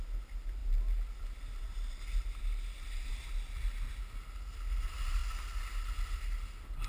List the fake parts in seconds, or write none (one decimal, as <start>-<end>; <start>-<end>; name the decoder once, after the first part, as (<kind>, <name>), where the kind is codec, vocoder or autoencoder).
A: 5.2-5.7 (vocoder, BigVGAN v2)